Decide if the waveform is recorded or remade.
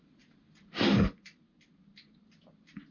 recorded